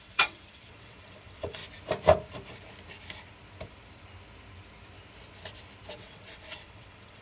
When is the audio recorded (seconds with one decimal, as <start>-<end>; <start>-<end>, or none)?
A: 1.6-5.9